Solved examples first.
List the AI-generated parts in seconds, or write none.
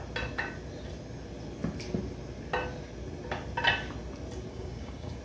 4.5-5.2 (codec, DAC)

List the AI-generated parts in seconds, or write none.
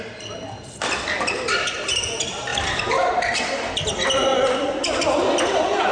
2.5-3.1 (vocoder, BigVGAN v2)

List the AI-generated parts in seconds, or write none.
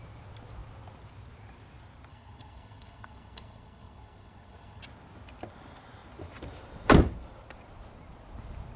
2.1-4.8 (codec, SNAC)